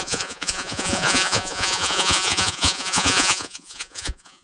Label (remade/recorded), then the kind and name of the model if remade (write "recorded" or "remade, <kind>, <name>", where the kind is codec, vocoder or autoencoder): remade, vocoder, Vocos